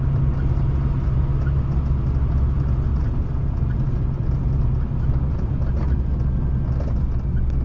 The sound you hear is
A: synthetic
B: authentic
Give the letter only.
B